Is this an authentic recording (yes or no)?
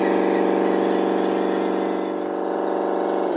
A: yes